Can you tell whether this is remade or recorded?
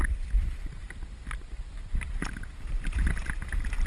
remade